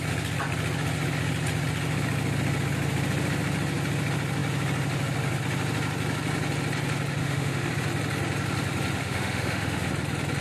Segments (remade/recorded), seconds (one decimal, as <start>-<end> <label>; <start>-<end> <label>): 0.0-7.2 recorded; 7.2-7.7 remade; 7.7-9.0 recorded; 9.0-9.9 remade; 9.9-10.4 recorded